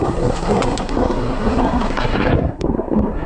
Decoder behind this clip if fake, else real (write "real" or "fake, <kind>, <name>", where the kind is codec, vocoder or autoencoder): fake, codec, SNAC